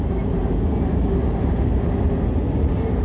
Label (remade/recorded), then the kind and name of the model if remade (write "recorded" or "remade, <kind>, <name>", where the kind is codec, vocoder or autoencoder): recorded